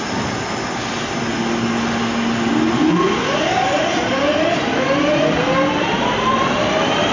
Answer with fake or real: real